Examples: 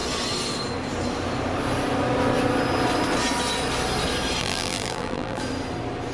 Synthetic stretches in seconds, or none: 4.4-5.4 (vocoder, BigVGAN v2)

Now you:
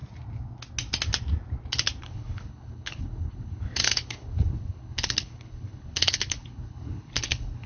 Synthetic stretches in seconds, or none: 2.0-7.7 (codec, HILCodec)

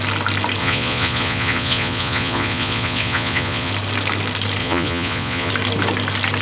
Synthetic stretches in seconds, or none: 0.6-3.7 (vocoder, Vocos); 4.6-5.5

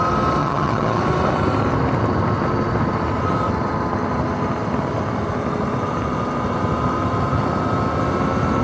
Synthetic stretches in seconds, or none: 0.4-1.0 (vocoder, HiFi-GAN)

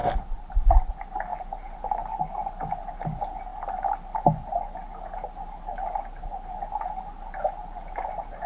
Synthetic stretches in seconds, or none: none

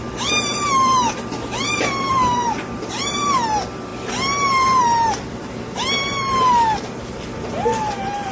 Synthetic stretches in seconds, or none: none